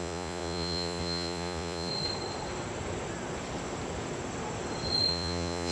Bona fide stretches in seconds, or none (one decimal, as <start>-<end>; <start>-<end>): 1.9-5.1